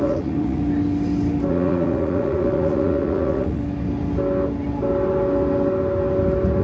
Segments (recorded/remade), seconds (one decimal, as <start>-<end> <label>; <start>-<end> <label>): 0.0-0.6 remade; 0.6-1.5 recorded; 1.5-3.6 remade; 3.6-6.6 recorded